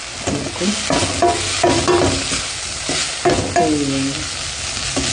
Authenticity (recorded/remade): recorded